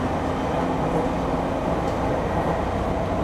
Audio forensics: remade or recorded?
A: recorded